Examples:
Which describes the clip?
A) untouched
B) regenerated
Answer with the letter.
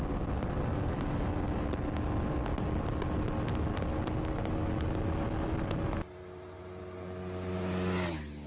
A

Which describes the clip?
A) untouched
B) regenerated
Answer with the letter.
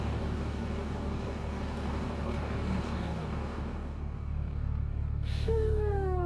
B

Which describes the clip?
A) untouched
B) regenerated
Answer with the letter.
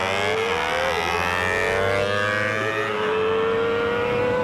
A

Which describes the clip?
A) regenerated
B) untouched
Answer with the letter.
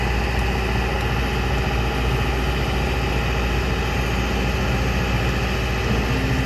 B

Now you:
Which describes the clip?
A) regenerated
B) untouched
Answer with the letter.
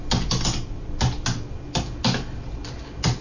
B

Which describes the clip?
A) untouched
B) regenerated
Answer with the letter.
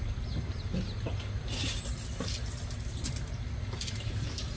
A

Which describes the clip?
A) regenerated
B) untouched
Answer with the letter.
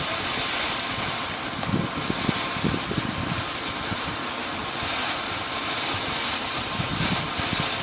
A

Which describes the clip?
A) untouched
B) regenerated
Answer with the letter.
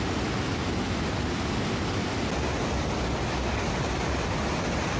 A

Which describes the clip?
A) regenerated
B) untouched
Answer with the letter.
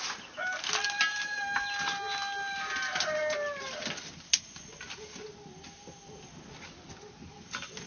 B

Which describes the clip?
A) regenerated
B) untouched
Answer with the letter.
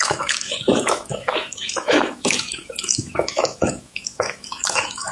A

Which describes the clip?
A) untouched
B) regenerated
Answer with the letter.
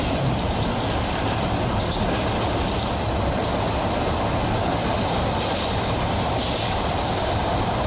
A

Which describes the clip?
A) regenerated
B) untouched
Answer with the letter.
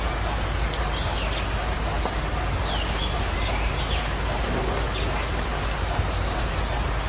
B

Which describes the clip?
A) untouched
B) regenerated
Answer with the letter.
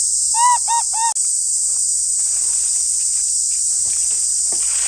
A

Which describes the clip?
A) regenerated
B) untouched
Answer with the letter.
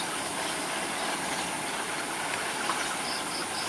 B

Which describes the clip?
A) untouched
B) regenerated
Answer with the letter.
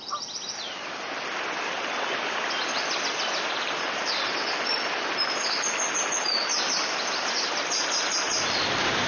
A